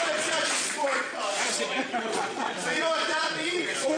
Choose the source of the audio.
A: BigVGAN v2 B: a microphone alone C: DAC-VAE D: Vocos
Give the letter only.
D